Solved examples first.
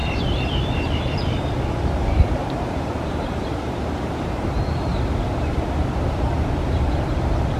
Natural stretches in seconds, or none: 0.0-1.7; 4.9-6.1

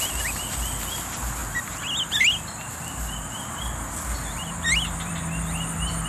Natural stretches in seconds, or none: 0.0-6.1

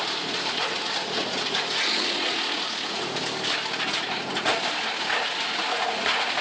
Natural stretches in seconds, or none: 3.2-3.9; 4.5-5.2

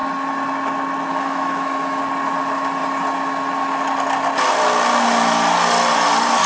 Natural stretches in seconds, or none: 0.0-1.1; 2.0-6.5

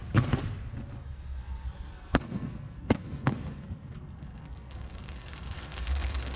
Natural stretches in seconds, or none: 0.0-1.0

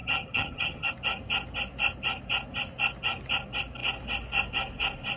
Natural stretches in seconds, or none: 0.9-5.2